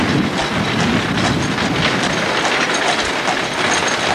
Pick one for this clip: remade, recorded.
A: recorded